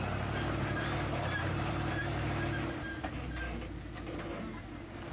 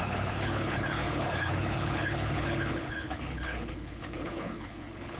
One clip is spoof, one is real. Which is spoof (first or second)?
second